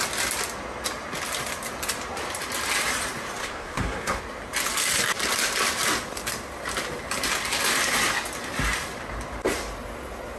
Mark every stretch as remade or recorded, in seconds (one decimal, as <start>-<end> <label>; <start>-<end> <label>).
0.0-3.4 recorded; 3.4-4.2 remade; 4.2-10.4 recorded